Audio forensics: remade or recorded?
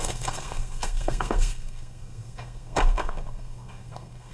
remade